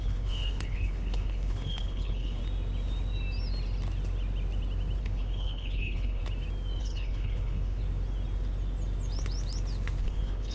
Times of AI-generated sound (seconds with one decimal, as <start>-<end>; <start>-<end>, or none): 0.0-2.4; 5.0-6.2; 6.8-7.8; 10.0-10.5

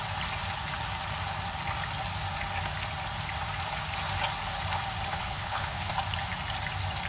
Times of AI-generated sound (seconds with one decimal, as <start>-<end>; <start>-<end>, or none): 5.1-5.9

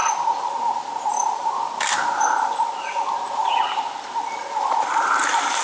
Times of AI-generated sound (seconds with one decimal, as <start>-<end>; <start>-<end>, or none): none

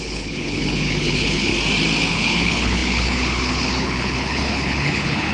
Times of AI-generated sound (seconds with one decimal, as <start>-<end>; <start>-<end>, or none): 0.0-1.5; 2.1-5.3

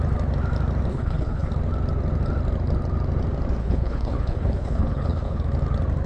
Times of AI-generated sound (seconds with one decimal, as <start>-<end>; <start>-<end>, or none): 0.9-1.5; 3.6-5.4